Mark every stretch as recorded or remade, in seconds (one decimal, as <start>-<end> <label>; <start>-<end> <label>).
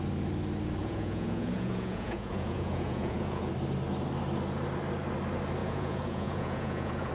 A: 0.0-0.8 recorded; 0.8-3.5 remade; 3.5-5.6 recorded; 5.6-7.1 remade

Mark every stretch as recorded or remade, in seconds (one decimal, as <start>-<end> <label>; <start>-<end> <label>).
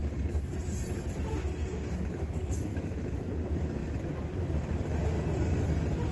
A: 0.0-2.7 recorded; 2.7-3.3 remade; 3.3-6.1 recorded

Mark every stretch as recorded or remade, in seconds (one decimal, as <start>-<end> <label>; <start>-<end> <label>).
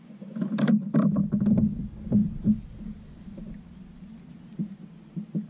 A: 0.0-5.5 recorded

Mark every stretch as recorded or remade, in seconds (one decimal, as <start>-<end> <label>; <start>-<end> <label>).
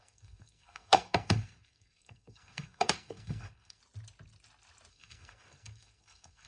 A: 0.0-3.8 remade; 3.8-4.9 recorded; 4.9-6.5 remade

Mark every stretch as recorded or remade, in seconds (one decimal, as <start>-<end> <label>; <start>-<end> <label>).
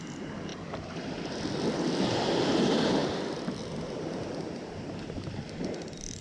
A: 0.0-0.5 recorded; 0.5-2.2 remade; 2.2-3.0 recorded; 3.0-5.6 remade; 5.6-6.2 recorded